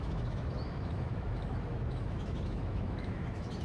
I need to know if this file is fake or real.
fake